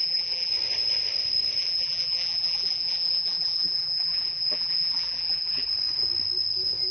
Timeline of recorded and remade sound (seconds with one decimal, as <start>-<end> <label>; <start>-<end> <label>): 0.0-0.5 remade; 0.5-1.6 recorded; 1.6-5.7 remade; 5.7-6.9 recorded